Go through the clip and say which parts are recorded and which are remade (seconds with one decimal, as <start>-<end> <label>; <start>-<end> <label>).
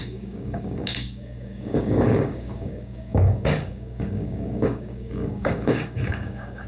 0.0-6.7 remade